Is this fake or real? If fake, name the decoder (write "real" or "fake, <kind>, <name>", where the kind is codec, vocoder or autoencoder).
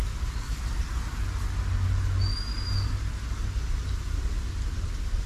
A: real